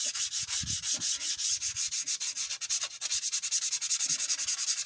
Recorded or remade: recorded